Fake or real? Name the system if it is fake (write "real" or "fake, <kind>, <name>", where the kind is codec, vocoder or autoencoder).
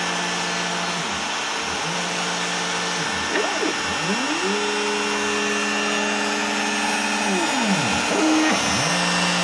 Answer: real